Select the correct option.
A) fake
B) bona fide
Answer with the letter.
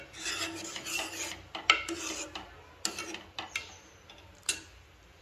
B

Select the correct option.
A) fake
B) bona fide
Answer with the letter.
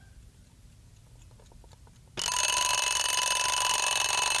B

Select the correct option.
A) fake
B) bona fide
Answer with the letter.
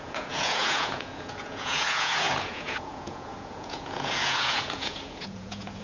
A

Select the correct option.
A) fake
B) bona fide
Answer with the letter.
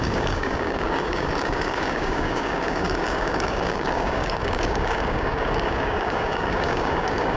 A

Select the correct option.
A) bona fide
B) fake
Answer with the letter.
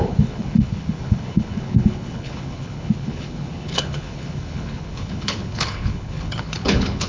B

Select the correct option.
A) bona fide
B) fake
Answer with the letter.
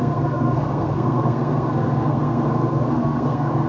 B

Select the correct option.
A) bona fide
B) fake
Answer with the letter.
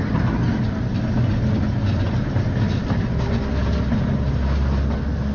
A